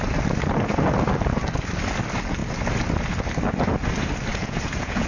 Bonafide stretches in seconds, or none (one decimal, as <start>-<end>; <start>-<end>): 0.0-4.3